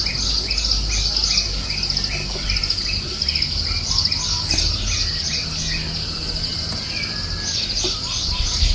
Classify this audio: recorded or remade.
recorded